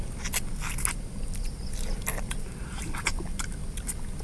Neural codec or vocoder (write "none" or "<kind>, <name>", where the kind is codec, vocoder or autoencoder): none